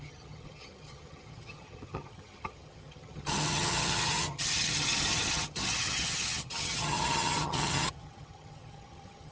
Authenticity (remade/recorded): remade